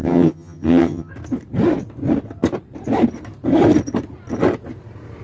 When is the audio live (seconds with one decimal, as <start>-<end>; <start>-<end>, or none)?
1.1-5.2